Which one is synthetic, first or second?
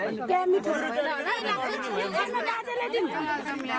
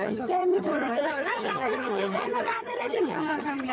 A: second